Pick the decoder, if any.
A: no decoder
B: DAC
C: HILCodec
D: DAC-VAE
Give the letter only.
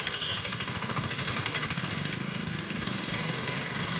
B